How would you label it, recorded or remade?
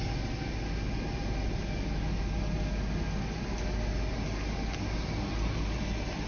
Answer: recorded